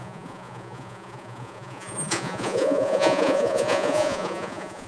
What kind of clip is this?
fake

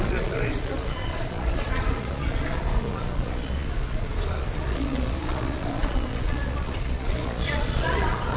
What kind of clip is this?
fake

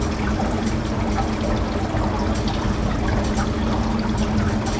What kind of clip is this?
real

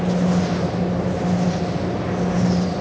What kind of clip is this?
real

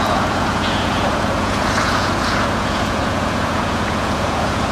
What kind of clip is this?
fake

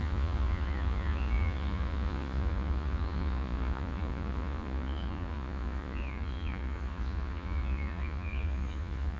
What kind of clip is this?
fake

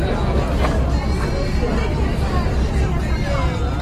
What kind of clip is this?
real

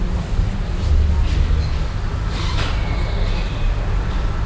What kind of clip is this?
real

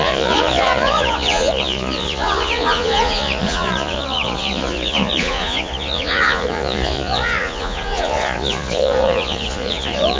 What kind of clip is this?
fake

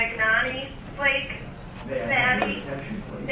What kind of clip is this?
real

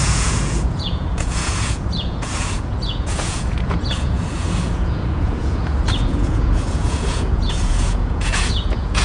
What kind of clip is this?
fake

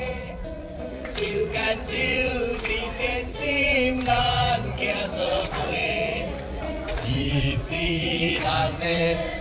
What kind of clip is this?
fake